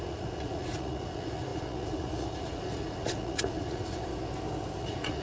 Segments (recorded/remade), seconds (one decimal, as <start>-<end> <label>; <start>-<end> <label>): 0.0-4.1 remade; 4.1-4.8 recorded; 4.8-5.2 remade